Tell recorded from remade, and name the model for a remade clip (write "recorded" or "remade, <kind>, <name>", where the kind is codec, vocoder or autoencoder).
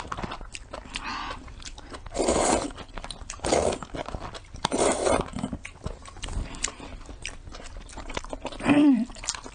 remade, vocoder, BigVGAN v2